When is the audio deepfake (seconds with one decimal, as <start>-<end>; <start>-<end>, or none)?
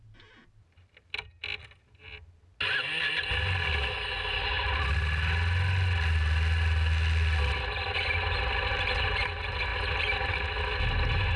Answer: none